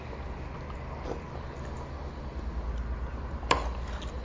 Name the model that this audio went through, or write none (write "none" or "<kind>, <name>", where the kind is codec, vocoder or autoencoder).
none